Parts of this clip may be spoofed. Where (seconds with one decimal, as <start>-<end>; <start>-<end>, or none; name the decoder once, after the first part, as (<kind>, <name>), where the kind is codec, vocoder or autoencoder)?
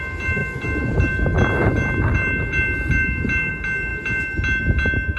none